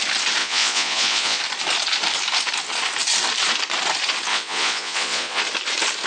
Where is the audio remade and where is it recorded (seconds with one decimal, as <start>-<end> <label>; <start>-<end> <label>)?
0.0-0.4 recorded; 0.4-1.4 remade; 1.4-4.3 recorded; 4.3-5.4 remade; 5.4-6.1 recorded